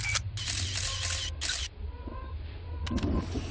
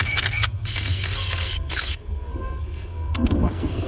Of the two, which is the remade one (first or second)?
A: second